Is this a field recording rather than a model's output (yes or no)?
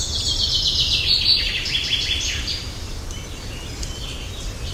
no